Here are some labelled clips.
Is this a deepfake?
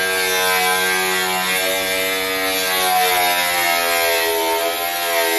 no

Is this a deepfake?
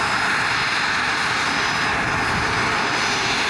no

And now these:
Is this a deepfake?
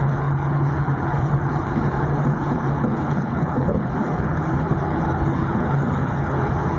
yes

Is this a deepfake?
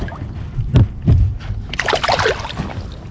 no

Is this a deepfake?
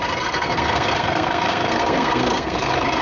yes